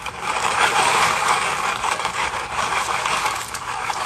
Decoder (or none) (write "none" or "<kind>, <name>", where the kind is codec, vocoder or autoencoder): codec, DAC